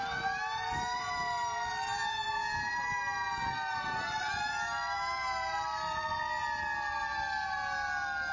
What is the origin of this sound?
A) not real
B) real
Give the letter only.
B